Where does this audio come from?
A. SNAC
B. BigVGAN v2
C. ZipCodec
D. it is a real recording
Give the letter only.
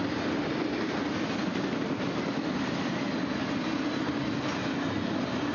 D